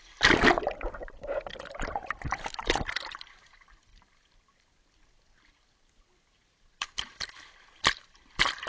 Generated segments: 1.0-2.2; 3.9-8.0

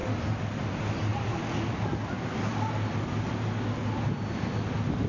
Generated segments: none

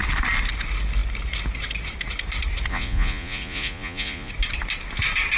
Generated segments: 2.7-4.3

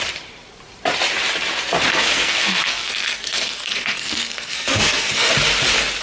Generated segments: 1.9-5.3